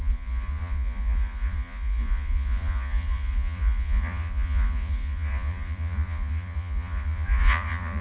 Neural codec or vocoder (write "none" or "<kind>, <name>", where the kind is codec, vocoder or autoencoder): vocoder, Vocos